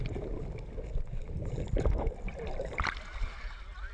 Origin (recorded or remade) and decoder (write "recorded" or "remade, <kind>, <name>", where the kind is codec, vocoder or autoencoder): recorded